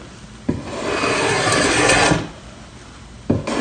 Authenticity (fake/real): real